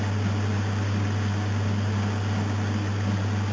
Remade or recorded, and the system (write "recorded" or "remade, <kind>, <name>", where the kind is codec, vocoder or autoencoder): recorded